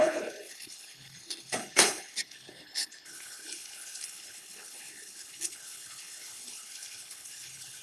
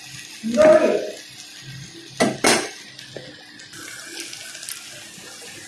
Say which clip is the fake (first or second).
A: first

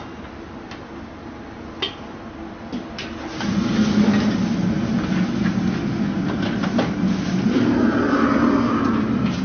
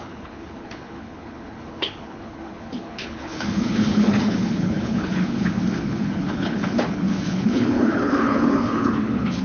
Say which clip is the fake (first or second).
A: second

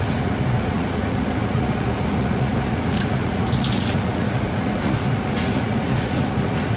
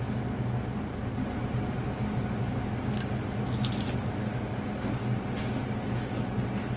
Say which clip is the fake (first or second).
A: first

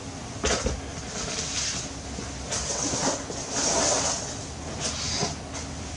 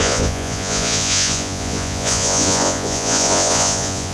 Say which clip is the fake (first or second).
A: second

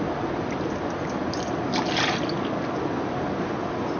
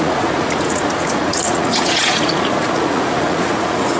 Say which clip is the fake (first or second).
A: second